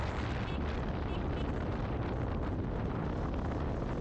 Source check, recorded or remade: recorded